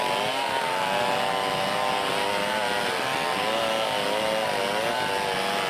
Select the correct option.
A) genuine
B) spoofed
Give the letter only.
A